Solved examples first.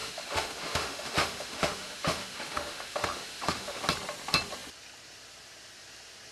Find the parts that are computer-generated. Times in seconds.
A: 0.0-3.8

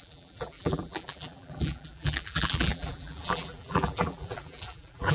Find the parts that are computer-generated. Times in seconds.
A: 0.0-5.1

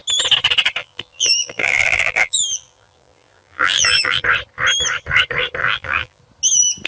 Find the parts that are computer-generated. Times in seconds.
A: 0.8-4.2; 5.6-6.2

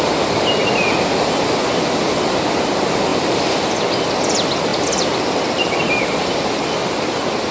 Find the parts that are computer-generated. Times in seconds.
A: 3.1-3.6; 4.7-7.0

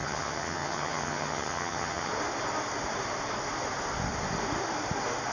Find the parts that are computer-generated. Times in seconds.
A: 0.0-2.1